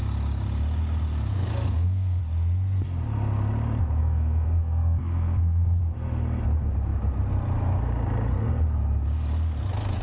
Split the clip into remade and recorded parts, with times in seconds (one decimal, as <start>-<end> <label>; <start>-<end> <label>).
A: 0.0-1.3 recorded; 1.3-2.2 remade; 2.2-4.0 recorded; 4.0-5.8 remade; 5.8-10.0 recorded